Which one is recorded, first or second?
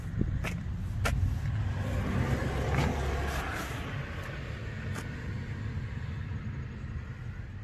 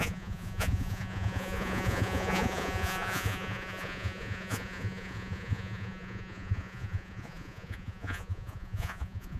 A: first